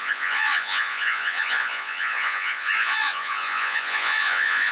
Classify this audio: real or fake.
fake